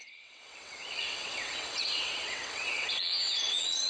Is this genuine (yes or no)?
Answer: no